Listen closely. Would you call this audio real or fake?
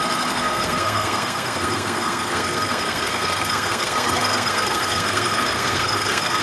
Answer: fake